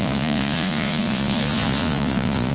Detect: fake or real fake